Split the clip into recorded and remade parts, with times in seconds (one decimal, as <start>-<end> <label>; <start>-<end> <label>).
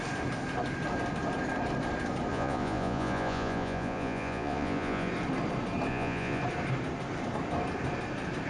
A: 0.0-2.3 recorded; 2.3-5.1 remade; 5.1-5.9 recorded; 5.9-6.4 remade; 6.4-8.5 recorded